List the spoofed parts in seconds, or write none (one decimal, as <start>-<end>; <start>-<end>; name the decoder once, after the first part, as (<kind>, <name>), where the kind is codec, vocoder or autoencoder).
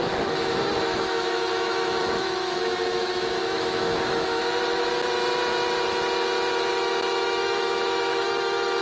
0.0-4.4 (autoencoder, DAC-VAE); 6.7-8.8